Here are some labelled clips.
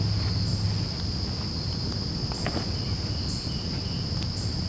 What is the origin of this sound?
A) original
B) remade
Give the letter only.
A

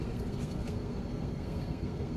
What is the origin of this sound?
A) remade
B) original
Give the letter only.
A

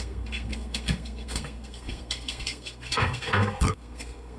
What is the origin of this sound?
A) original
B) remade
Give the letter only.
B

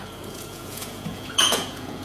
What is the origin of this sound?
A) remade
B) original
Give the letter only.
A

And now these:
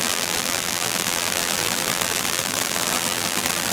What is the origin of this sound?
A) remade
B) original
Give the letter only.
A